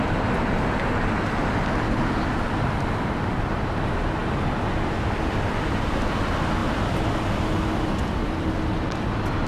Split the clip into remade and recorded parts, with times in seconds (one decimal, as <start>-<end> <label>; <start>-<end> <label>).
0.0-9.5 recorded